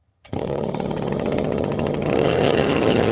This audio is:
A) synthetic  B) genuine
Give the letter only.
A